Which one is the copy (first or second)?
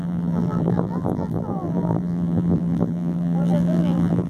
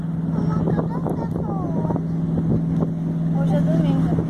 first